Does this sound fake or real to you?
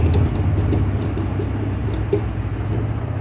real